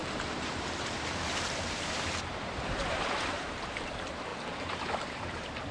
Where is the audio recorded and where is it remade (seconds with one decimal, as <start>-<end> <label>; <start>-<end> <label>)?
0.0-5.7 remade